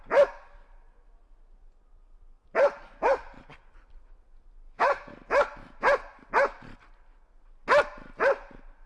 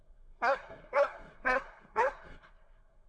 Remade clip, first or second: second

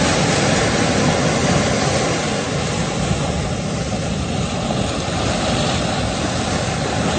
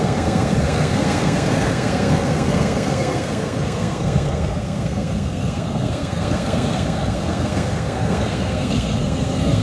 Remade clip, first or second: second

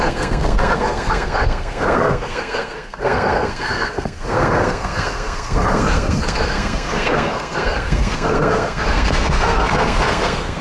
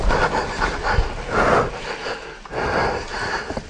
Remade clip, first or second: first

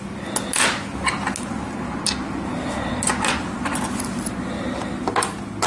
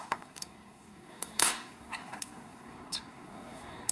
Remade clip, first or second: second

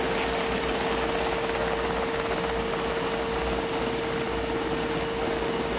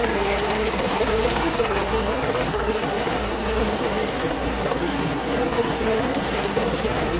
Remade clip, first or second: second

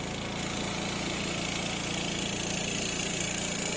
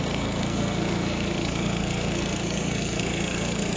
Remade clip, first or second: second